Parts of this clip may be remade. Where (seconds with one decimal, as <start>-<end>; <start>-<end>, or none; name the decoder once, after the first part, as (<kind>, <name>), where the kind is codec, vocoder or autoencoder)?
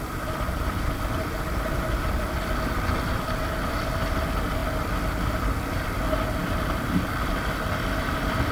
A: 6.4-7.4 (vocoder, BigVGAN v2)